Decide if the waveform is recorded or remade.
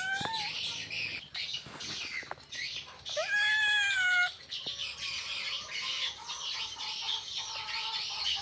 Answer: recorded